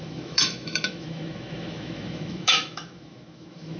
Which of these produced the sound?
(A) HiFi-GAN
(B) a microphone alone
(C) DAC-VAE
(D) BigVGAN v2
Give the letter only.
C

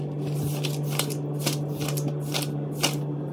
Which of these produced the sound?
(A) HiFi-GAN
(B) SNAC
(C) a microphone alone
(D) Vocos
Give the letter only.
C